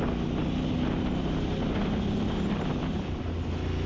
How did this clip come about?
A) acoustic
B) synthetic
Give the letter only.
A